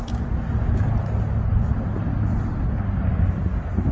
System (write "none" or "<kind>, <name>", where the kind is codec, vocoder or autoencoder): none